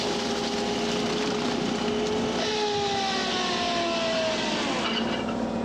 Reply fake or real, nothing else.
real